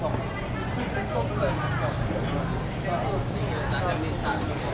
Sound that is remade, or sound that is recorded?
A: recorded